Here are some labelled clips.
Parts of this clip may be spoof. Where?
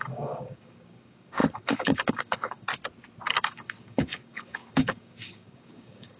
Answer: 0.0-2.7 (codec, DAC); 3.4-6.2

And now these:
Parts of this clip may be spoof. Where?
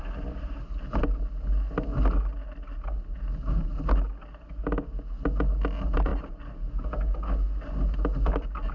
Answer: none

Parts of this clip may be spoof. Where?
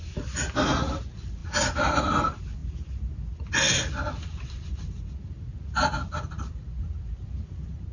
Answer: none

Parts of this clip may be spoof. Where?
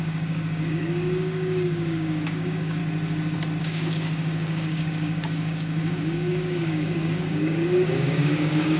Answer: 0.0-2.8 (codec, DAC); 3.6-8.8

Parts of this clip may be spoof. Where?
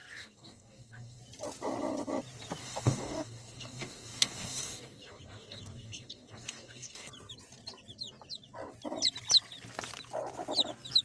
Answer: 0.0-1.2 (codec, DAC); 2.6-7.1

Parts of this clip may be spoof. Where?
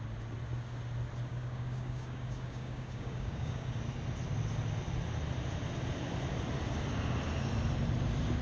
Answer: 1.3-3.8 (codec, DAC)